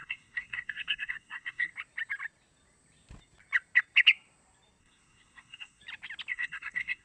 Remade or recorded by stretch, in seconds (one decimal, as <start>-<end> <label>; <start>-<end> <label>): 0.0-1.7 remade; 1.7-4.8 recorded; 4.8-5.8 remade; 5.8-6.3 recorded; 6.3-7.0 remade